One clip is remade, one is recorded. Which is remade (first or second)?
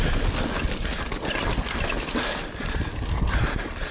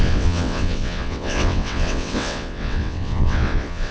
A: second